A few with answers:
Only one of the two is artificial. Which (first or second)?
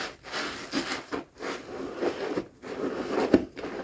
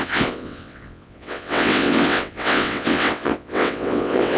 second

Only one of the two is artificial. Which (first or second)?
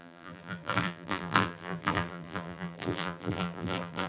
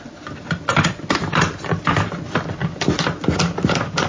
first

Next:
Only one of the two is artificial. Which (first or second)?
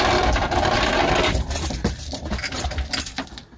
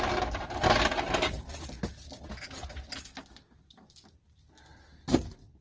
first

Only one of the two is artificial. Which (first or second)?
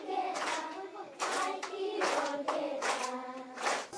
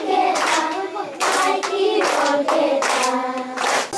first